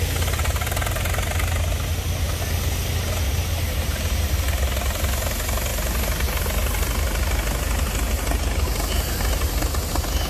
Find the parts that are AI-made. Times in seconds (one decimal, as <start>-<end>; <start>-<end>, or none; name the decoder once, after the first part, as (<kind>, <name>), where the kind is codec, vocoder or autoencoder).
none